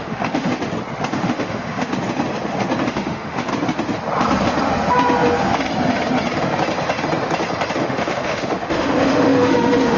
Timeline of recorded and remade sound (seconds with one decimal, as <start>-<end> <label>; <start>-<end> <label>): 0.0-0.5 remade; 0.5-1.1 recorded; 1.1-1.9 remade; 1.9-2.9 recorded; 2.9-3.5 remade; 3.5-7.8 recorded; 7.8-10.0 remade